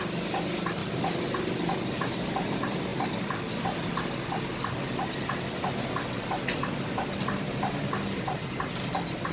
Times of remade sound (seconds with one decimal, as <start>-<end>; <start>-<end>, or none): none